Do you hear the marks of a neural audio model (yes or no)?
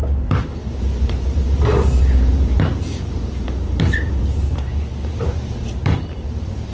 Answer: yes